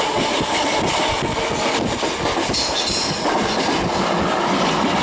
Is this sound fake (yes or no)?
no